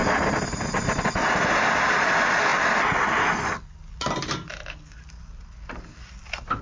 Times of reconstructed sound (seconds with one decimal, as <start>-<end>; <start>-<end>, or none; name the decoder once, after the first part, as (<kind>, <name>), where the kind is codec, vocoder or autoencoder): none